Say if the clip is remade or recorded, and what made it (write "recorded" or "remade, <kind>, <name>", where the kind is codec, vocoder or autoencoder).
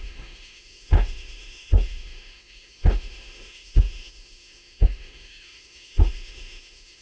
remade, autoencoder, DAC-VAE